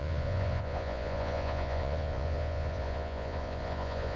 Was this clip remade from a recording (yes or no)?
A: yes